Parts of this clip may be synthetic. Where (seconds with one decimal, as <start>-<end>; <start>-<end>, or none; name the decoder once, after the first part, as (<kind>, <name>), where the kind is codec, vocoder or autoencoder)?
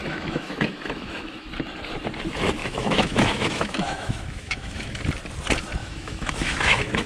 0.0-1.5 (autoencoder, DAC-VAE); 2.6-5.0; 5.8-7.1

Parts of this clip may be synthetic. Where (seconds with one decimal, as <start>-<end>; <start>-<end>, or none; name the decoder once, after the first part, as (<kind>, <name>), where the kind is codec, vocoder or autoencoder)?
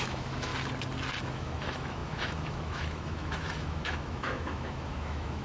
0.0-0.5 (autoencoder, DAC-VAE); 1.2-5.4